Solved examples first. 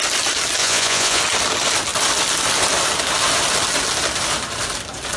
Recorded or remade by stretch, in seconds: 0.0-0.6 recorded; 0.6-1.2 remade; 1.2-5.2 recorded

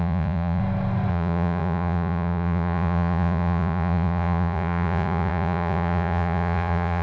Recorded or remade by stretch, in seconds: 0.0-0.6 remade; 0.6-1.1 recorded; 1.1-7.0 remade